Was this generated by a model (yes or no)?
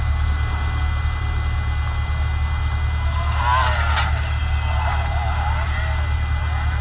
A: no